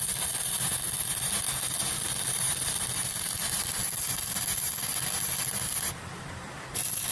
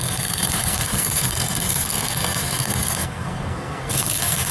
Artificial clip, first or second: second